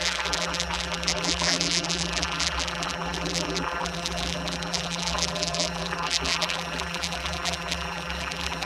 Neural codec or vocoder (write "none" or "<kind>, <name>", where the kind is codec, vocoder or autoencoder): vocoder, BigVGAN v2